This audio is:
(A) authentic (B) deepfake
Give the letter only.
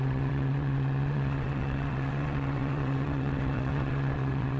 B